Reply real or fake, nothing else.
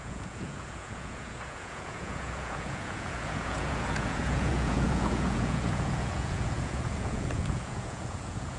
fake